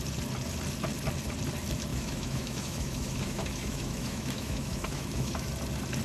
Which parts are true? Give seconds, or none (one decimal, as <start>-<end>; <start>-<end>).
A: 0.0-1.9; 5.5-6.0